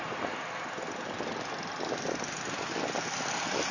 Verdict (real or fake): real